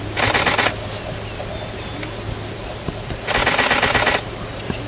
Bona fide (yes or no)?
yes